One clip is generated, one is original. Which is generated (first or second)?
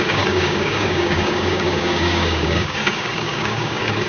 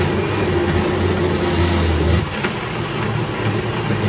first